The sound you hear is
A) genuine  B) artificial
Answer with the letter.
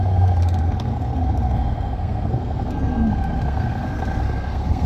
B